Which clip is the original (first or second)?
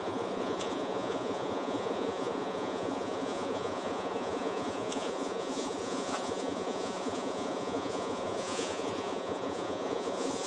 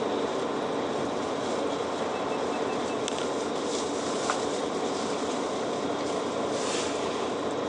second